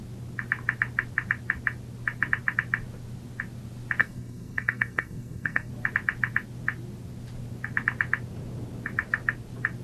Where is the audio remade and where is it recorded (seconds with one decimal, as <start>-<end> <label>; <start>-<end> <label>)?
0.0-4.0 recorded; 4.0-5.7 remade; 5.7-9.8 recorded